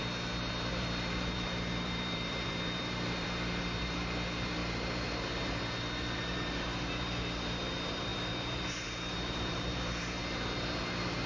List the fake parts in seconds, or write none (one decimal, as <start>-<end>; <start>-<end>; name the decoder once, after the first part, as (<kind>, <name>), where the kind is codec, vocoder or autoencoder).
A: 0.7-10.2 (vocoder, BigVGAN v2)

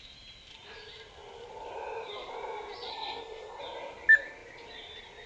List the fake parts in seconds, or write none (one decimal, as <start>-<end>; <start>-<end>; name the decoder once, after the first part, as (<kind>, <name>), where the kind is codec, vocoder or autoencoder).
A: 2.9-3.6 (codec, SNAC)

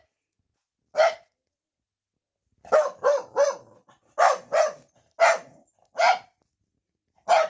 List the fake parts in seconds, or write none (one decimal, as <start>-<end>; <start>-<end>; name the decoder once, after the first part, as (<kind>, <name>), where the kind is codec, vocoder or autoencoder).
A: none

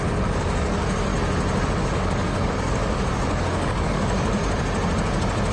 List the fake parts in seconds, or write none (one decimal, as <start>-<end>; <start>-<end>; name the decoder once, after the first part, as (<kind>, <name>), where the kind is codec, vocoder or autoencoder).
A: 0.0-1.1 (codec, DAC); 1.7-4.4